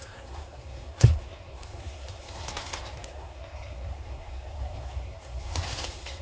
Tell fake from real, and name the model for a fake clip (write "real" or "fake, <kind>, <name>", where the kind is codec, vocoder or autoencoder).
fake, codec, SNAC